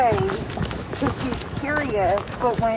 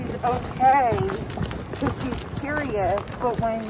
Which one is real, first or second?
second